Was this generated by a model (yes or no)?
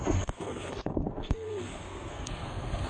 yes